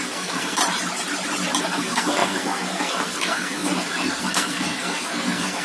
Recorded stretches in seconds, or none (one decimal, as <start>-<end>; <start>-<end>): 0.6-1.6